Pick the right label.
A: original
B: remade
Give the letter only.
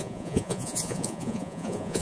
B